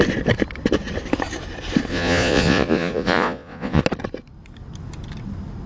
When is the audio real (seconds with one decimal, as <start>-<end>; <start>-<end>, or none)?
0.0-1.9; 3.8-5.7